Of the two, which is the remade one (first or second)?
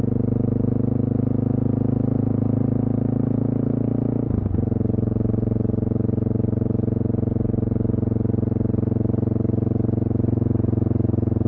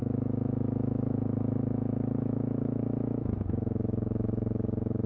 second